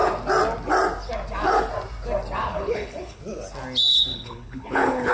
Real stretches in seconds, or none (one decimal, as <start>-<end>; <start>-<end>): 0.0-2.5; 3.2-4.1